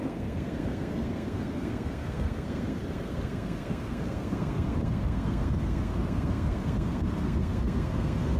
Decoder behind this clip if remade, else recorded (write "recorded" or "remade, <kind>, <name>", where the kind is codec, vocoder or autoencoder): remade, codec, SNAC